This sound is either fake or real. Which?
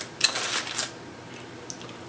real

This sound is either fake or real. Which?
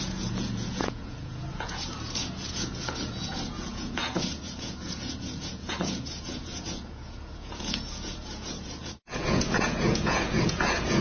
fake